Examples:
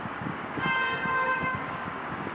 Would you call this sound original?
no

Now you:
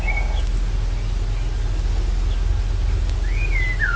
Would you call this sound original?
yes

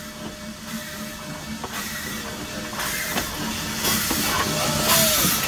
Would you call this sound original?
yes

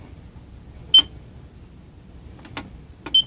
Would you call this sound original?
yes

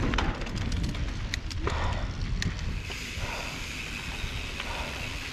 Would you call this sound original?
yes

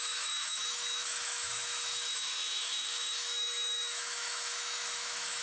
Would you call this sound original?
no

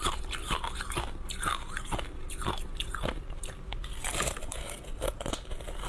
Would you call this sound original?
yes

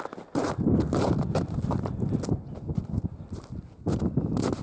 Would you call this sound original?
yes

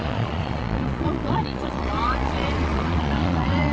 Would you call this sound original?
no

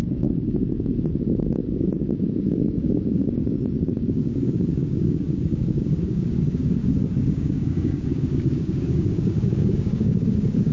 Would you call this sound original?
no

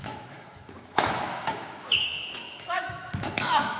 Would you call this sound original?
no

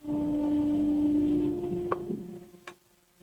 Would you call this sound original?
yes